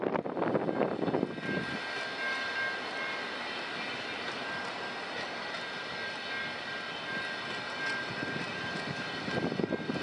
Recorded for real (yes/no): yes